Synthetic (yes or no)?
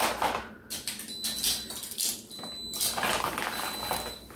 no